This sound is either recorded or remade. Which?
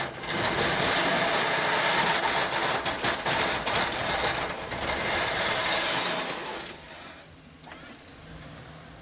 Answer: recorded